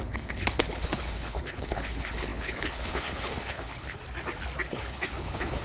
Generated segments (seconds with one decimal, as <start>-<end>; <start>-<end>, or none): 0.0-4.0; 4.7-5.6